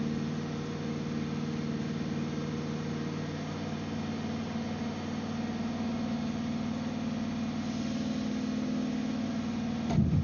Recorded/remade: recorded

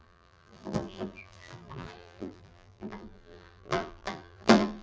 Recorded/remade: remade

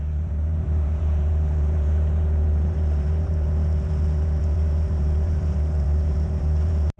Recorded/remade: remade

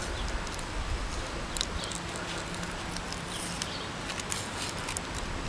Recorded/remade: recorded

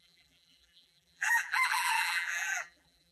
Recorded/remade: remade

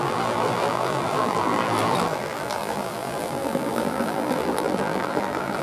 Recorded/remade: remade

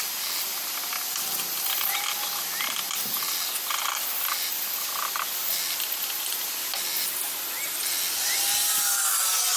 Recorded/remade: recorded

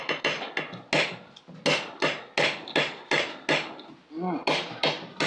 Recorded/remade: recorded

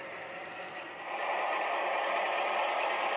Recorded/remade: remade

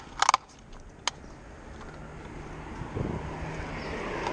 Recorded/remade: recorded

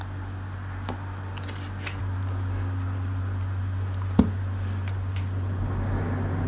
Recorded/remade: recorded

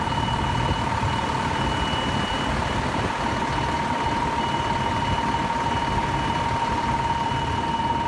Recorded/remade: remade